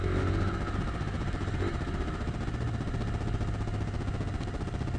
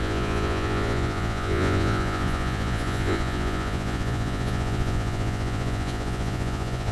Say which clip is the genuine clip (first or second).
first